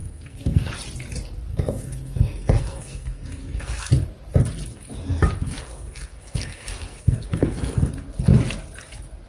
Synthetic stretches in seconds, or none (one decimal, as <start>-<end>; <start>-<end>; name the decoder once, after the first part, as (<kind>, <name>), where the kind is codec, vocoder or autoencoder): 0.0-0.7 (codec, SNAC); 1.5-3.9; 5.4-7.9